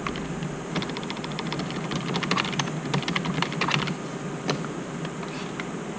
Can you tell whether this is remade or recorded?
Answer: recorded